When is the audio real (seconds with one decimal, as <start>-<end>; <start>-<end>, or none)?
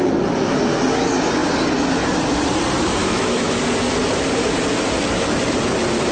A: 0.0-3.0; 3.5-6.1